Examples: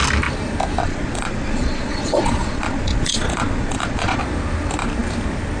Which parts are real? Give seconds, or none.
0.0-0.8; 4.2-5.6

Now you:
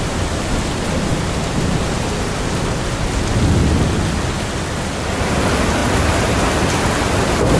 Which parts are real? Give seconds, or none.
0.0-7.6

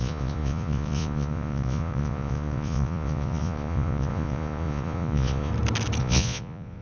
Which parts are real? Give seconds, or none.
5.5-6.0